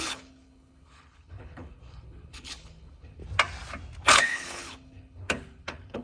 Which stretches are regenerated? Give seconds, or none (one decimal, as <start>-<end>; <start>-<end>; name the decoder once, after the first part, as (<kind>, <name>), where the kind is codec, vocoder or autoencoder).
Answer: 0.0-3.2 (codec, HILCodec); 4.1-6.0